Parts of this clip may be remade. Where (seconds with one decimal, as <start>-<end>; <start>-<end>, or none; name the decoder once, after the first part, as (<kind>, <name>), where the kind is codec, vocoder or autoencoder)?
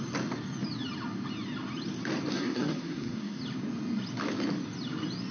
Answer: 2.3-3.4 (codec, SNAC)